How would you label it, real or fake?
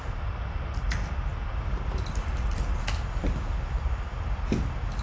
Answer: real